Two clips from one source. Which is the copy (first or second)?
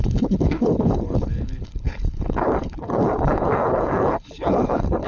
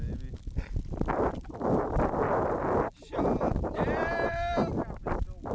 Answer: first